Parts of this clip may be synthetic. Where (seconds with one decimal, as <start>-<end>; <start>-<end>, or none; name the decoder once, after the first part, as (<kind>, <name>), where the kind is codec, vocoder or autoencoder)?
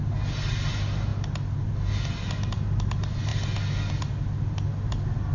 none